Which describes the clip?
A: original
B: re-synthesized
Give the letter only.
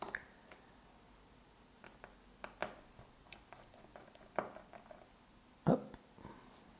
A